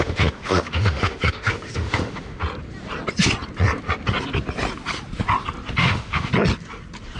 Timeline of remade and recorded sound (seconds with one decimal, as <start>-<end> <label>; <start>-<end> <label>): 0.0-2.4 remade; 2.4-5.8 recorded; 5.8-6.3 remade; 6.3-7.2 recorded